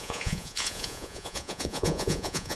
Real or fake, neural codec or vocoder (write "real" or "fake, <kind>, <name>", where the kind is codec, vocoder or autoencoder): fake, vocoder, Vocos